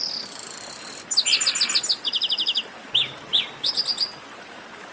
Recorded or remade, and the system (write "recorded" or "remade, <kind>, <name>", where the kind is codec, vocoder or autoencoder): recorded